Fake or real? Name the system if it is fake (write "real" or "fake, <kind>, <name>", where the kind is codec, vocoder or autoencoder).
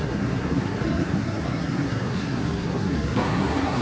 fake, codec, SNAC